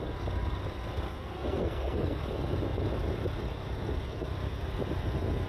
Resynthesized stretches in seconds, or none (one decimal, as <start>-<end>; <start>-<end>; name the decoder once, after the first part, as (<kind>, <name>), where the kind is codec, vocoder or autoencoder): 1.2-2.2 (codec, SNAC)